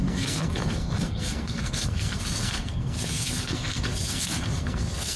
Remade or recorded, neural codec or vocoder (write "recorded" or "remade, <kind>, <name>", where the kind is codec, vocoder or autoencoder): remade, codec, SNAC